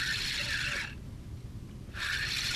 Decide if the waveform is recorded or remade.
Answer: recorded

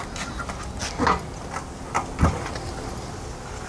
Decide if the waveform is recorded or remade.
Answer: recorded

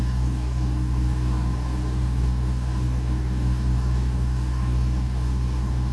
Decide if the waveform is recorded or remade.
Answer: remade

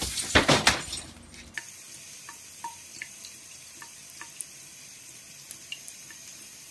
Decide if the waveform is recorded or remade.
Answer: remade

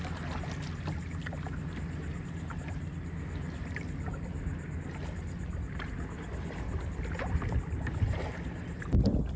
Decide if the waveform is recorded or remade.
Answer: recorded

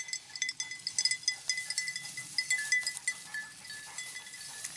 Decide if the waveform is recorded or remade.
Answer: recorded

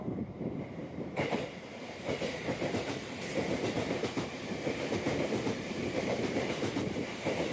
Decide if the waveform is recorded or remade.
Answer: remade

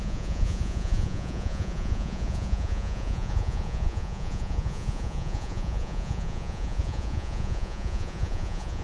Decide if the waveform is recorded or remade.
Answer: remade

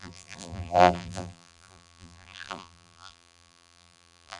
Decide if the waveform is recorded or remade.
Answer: remade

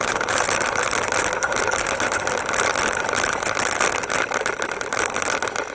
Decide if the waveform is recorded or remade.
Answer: recorded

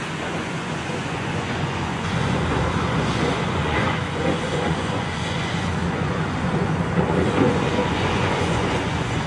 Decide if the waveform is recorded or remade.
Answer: remade